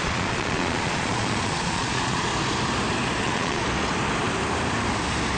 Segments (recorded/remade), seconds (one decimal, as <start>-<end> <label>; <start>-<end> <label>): 0.0-2.3 remade; 2.3-3.2 recorded; 3.2-3.6 remade; 3.6-5.4 recorded